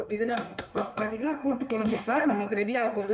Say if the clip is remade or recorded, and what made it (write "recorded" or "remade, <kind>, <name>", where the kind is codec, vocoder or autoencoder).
remade, codec, SNAC